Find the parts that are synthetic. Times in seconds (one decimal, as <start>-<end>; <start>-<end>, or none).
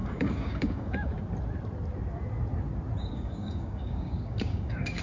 0.0-1.1; 3.0-5.0